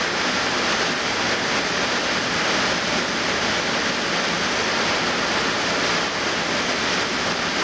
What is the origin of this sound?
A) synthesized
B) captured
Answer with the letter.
B